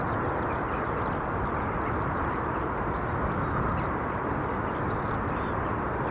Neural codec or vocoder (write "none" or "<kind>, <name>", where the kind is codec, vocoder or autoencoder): none